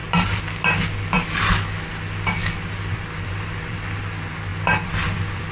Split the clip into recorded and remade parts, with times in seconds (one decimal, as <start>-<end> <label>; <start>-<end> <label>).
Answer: 0.0-5.5 recorded